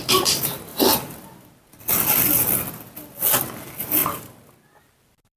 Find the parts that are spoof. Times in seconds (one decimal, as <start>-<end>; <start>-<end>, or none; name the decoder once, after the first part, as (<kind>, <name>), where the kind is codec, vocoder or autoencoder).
none